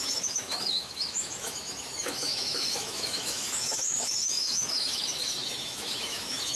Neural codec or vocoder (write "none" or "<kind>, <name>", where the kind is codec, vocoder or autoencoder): autoencoder, DAC-VAE